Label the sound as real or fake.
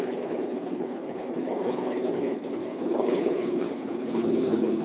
fake